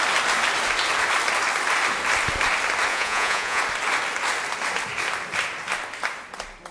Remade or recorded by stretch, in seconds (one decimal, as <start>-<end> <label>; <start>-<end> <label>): 0.0-2.9 recorded; 2.9-3.6 remade; 3.6-6.7 recorded

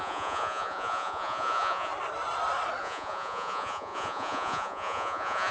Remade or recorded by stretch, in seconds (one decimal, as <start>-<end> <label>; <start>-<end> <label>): 0.0-1.9 remade; 1.9-2.8 recorded; 2.8-5.5 remade

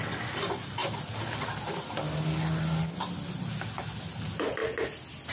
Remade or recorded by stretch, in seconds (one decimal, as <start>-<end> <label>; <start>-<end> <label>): 0.0-5.3 recorded

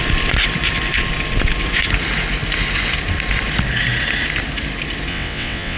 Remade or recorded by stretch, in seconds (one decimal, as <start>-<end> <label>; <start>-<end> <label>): 0.0-5.1 recorded; 5.1-5.8 remade

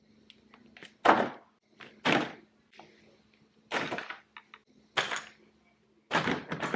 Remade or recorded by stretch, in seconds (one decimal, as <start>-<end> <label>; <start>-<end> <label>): 0.0-6.8 recorded